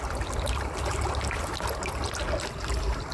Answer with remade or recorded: recorded